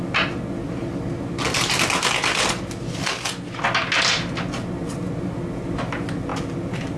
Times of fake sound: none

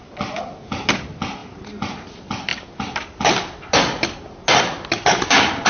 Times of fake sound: none

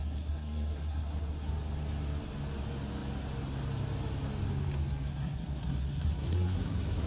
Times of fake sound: 0.0-1.5 (codec, SNAC); 5.1-7.1

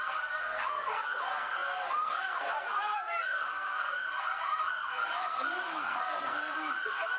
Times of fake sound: 0.0-7.2 (codec, SNAC)